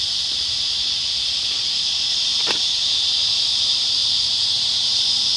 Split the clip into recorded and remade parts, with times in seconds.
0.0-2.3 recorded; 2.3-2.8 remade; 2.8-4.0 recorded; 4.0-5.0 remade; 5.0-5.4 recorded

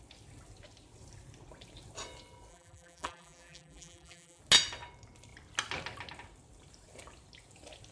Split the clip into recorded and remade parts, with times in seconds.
0.0-2.5 recorded; 2.5-4.4 remade; 4.4-7.9 recorded

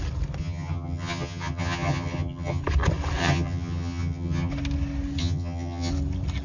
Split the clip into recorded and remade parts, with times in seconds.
0.0-0.4 recorded; 0.4-2.6 remade; 2.6-3.2 recorded; 3.2-4.5 remade; 4.5-5.2 recorded; 5.2-5.9 remade; 5.9-6.4 recorded

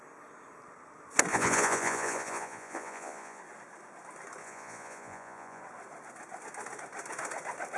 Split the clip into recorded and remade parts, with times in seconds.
0.0-1.3 recorded; 1.3-3.4 remade; 3.4-4.4 recorded; 4.4-5.6 remade; 5.6-7.8 recorded

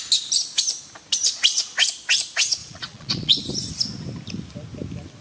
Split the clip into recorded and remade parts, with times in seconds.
0.0-2.6 recorded; 2.6-3.4 remade; 3.4-5.2 recorded

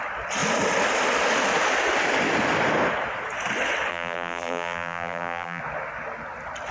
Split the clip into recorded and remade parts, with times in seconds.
0.0-3.9 recorded; 3.9-5.6 remade; 5.6-6.7 recorded